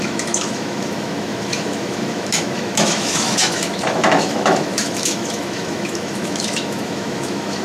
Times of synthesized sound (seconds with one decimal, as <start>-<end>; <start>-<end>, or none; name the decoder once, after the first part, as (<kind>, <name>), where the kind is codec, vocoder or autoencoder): 0.0-7.6 (autoencoder, DAC-VAE)